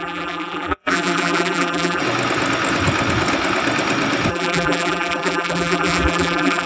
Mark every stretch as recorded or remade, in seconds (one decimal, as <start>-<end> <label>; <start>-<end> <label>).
0.0-2.0 remade; 2.0-4.3 recorded; 4.3-6.7 remade